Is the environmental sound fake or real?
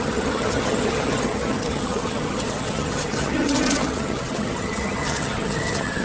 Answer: fake